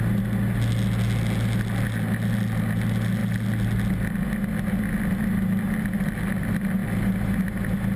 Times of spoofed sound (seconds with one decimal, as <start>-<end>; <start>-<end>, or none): none